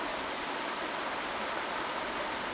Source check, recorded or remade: recorded